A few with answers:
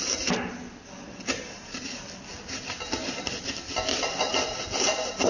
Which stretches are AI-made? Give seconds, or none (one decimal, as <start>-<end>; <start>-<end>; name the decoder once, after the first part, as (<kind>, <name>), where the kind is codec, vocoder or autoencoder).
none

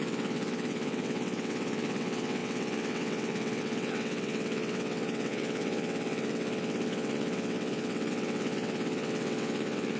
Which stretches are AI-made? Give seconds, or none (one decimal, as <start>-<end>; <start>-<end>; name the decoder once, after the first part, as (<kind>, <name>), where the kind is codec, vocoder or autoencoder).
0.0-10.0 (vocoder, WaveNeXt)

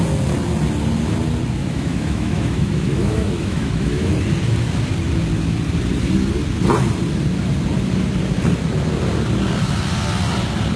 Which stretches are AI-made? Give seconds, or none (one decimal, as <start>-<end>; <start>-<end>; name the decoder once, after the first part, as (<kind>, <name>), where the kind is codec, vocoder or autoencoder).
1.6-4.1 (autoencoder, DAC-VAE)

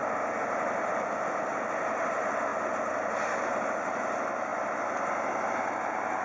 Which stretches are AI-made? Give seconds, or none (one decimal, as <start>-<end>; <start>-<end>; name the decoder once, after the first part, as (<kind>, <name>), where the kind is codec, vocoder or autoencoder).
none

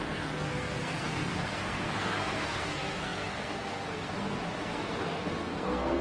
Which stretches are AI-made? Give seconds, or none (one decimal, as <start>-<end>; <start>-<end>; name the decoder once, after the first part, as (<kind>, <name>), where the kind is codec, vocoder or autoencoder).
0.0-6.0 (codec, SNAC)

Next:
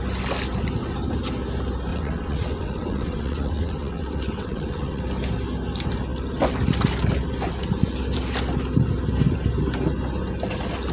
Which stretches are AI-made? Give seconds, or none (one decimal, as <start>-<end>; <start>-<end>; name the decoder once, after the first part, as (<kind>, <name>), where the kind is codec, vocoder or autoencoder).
1.9-5.0 (vocoder, WaveNeXt)

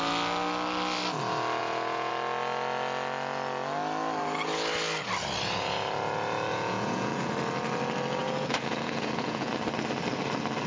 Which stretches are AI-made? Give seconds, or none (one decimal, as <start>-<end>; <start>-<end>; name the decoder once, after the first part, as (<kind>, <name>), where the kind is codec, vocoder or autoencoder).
1.6-2.1 (vocoder, Vocos); 6.5-7.3; 8.2-9.5

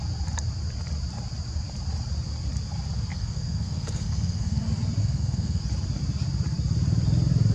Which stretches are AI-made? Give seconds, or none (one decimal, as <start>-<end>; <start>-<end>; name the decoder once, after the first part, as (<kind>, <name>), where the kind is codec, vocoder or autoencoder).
3.1-4.6 (codec, SNAC); 5.0-5.6